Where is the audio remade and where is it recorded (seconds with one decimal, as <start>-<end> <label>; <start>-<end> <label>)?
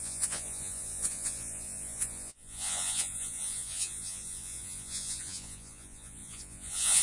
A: 0.0-7.0 remade